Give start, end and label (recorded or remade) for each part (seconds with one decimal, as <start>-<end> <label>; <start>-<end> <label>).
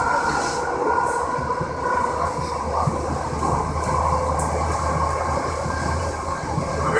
0.0-6.0 recorded; 6.0-6.6 remade; 6.6-7.0 recorded